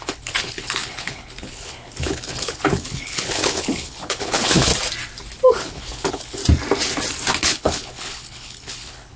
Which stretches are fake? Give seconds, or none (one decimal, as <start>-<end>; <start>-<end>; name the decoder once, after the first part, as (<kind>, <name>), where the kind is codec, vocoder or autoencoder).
0.0-4.7 (codec, HILCodec); 5.5-6.4; 7.4-9.2

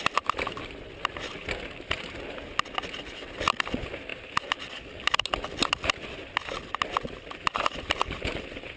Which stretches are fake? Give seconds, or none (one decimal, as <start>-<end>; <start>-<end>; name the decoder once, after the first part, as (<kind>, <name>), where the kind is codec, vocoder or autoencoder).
none

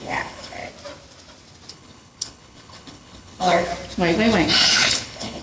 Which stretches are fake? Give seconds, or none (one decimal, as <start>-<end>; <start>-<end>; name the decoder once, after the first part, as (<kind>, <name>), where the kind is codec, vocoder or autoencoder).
0.0-0.6 (codec, HILCodec); 1.7-3.7; 4.7-5.4

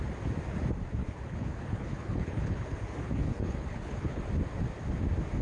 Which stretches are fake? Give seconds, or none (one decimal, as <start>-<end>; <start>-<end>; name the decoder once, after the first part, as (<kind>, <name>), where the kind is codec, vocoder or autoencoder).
1.0-4.2 (codec, HILCodec)

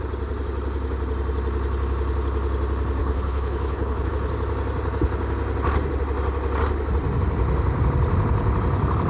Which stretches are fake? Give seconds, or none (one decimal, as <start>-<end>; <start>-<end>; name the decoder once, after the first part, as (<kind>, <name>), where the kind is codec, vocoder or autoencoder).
3.0-4.1 (codec, HILCodec)

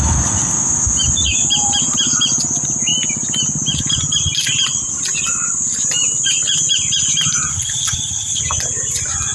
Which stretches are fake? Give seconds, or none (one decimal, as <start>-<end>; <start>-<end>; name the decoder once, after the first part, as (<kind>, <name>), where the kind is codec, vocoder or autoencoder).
7.5-8.4 (codec, HILCodec)

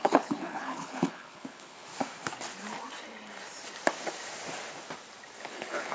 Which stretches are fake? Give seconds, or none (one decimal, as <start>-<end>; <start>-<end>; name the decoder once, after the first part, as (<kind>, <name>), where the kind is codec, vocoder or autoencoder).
0.0-1.9 (codec, HILCodec); 5.4-5.9